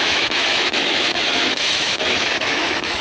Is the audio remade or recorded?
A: remade